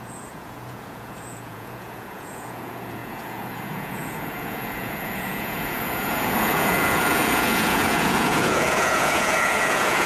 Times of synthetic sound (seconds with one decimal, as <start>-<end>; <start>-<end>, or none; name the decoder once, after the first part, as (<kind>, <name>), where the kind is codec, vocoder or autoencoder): 0.0-10.1 (vocoder, Vocos)